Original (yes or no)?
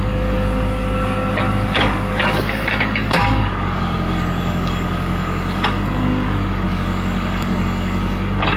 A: no